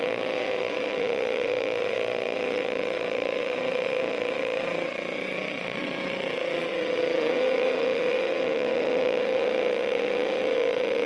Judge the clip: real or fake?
fake